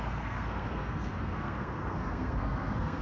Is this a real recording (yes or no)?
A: no